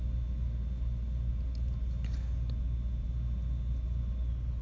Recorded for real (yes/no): yes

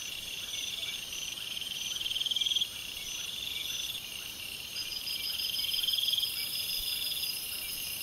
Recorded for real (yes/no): no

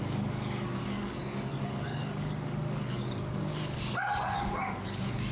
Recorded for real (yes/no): no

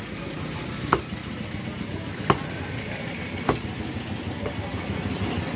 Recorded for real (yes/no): yes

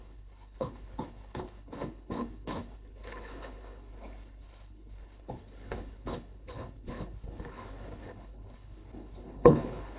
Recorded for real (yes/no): no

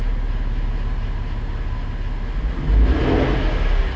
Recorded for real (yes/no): yes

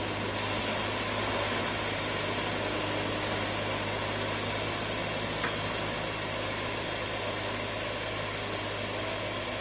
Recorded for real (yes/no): yes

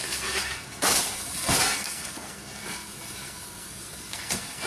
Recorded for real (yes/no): no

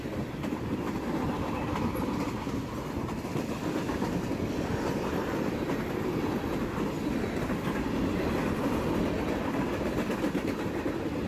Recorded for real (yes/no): yes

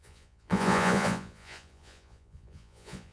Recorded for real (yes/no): no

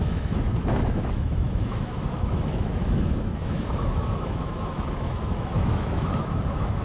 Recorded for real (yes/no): no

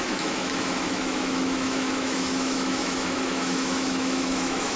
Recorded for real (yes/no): no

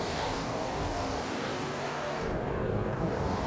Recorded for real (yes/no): no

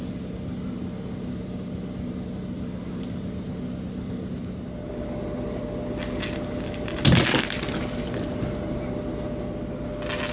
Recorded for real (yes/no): yes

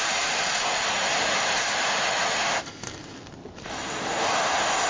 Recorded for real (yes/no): yes